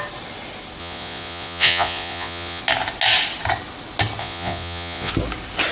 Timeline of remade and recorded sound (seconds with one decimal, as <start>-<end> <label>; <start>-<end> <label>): 0.0-0.8 recorded; 0.8-2.6 remade; 2.6-4.2 recorded; 4.2-5.1 remade; 5.1-5.7 recorded